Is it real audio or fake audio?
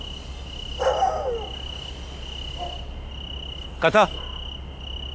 real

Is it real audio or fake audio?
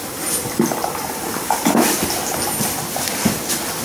real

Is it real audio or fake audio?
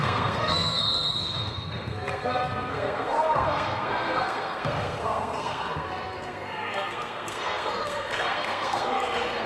fake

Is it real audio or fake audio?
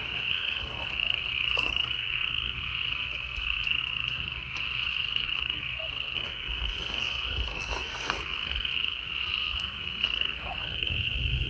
fake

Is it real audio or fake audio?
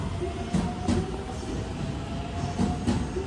real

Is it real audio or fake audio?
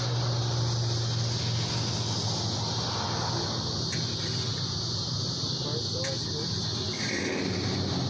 real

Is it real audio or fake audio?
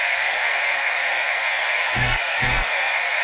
fake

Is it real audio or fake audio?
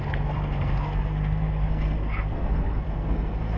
fake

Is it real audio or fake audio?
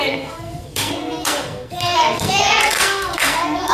fake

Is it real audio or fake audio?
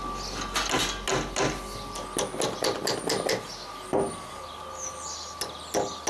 real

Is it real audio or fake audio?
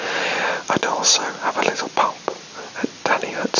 real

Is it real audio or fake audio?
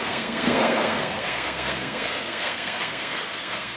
fake